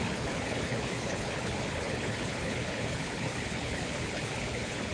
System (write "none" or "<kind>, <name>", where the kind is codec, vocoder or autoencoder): codec, HILCodec